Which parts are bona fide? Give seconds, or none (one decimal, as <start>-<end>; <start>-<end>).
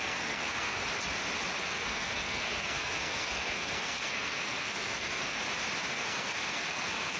0.8-1.6; 5.4-5.9